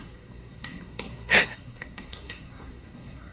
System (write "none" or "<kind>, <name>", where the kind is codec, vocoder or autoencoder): codec, SNAC